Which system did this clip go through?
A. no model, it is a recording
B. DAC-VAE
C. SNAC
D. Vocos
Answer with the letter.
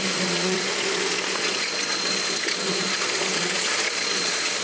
D